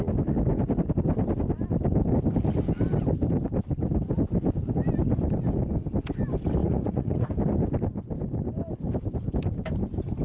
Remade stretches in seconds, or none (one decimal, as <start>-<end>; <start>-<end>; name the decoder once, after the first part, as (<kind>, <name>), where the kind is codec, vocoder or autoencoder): 6.6-7.3 (vocoder, Vocos)